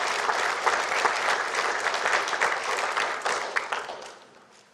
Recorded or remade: recorded